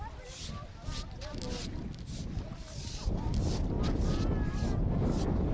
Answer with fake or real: real